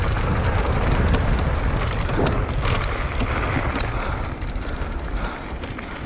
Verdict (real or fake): real